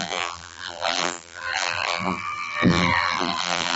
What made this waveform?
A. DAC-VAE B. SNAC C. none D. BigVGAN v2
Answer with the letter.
D